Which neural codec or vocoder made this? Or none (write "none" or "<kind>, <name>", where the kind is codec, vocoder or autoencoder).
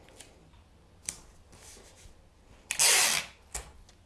none